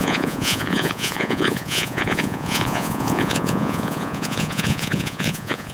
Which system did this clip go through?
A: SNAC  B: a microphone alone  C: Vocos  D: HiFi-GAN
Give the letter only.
C